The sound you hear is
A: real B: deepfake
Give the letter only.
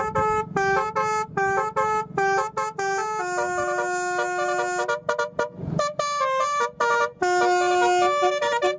A